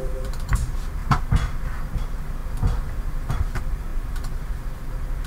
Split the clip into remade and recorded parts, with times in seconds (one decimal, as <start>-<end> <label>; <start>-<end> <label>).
0.0-2.4 remade; 2.4-3.3 recorded; 3.3-5.3 remade